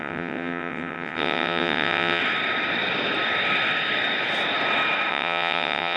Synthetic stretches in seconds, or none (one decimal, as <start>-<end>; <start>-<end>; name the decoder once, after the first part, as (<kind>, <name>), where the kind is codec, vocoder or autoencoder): 0.0-2.2 (vocoder, WaveNeXt); 5.1-6.0

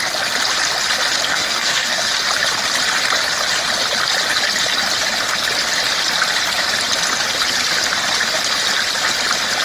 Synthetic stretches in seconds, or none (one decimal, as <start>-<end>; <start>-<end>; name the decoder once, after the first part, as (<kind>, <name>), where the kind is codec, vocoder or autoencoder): 1.3-2.1 (codec, SNAC)